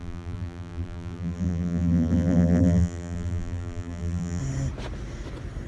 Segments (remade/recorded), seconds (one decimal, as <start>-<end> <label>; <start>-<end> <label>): 0.0-4.4 remade; 4.4-5.7 recorded